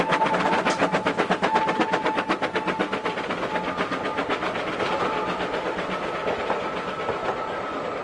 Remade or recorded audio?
recorded